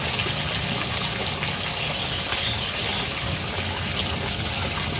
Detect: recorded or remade recorded